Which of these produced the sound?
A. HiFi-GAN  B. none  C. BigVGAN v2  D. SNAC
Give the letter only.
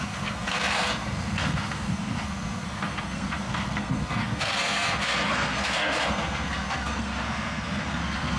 D